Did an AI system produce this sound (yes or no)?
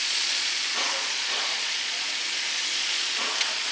yes